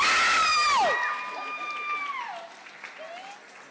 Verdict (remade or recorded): recorded